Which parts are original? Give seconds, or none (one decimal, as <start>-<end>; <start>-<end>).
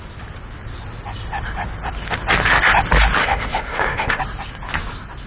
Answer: 0.0-3.2; 4.2-5.3